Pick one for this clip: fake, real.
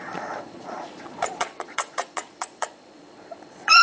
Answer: fake